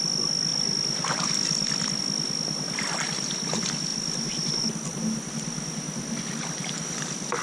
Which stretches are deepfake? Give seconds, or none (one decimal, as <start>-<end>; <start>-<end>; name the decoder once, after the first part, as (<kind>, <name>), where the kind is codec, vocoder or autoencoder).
3.9-4.7 (vocoder, BigVGAN v2)